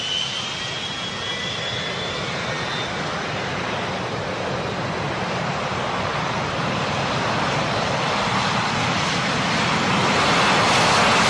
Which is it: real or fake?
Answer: real